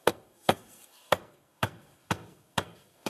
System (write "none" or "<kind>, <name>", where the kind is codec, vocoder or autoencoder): codec, SNAC